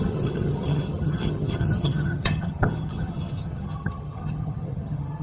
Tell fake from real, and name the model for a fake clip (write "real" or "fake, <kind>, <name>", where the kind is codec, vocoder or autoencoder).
fake, vocoder, HiFi-GAN